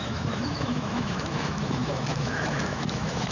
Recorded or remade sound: remade